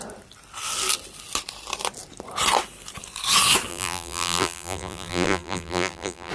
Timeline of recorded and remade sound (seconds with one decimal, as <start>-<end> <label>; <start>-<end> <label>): 0.0-3.7 recorded; 3.7-6.3 remade

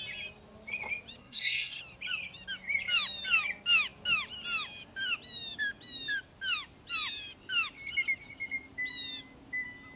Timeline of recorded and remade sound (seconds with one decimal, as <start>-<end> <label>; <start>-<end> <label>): 0.0-1.2 recorded; 1.2-1.8 remade; 1.8-10.0 recorded

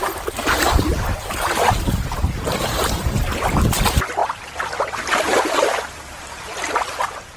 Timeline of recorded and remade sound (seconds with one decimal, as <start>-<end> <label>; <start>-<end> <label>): 0.0-7.4 recorded

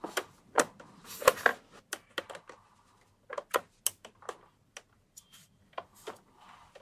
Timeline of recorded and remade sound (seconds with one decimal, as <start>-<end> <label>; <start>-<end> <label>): 0.0-6.8 recorded

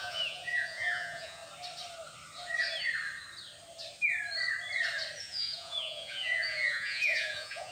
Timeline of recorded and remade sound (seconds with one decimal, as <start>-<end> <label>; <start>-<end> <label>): 0.0-1.4 remade; 1.4-5.2 recorded; 5.2-7.7 remade

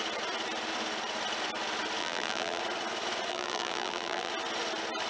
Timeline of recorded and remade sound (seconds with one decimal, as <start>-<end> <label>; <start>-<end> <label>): 0.0-2.0 recorded; 2.0-2.6 remade; 2.6-3.3 recorded; 3.3-4.3 remade; 4.3-5.1 recorded